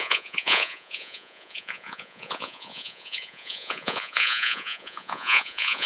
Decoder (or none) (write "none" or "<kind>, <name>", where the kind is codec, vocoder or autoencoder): vocoder, Vocos